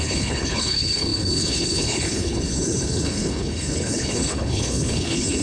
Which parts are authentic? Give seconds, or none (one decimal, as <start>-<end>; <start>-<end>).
none